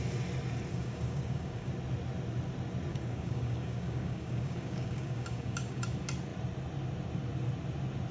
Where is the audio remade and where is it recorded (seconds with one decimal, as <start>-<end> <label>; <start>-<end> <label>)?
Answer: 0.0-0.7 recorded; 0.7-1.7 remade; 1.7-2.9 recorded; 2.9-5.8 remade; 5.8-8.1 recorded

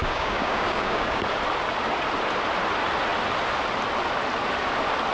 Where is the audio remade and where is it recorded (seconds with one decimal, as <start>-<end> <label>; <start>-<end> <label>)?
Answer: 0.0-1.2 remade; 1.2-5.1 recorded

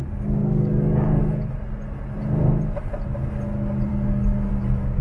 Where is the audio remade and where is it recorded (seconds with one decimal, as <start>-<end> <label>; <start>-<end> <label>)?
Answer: 0.0-0.4 recorded; 0.4-1.2 remade; 1.2-3.9 recorded; 3.9-4.5 remade; 4.5-5.0 recorded

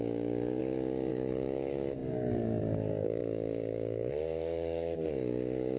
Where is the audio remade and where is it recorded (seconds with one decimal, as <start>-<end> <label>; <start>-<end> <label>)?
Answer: 0.0-0.6 remade; 0.6-1.1 recorded; 1.1-5.8 remade